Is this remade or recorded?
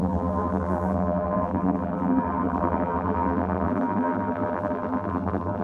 remade